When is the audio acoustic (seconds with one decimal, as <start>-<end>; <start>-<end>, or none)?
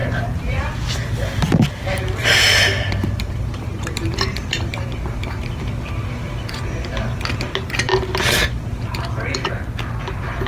0.9-3.7; 6.5-10.5